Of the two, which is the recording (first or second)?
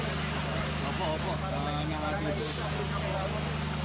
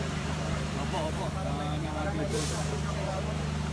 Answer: first